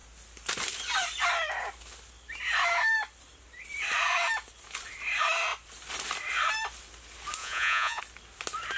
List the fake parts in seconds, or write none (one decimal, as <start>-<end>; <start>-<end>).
7.4-8.0